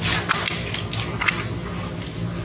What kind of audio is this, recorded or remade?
recorded